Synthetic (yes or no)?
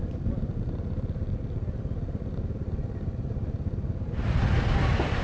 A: no